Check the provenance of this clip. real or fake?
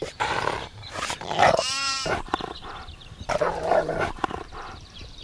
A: fake